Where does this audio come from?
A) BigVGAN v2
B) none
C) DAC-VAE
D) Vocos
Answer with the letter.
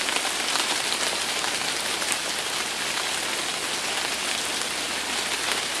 B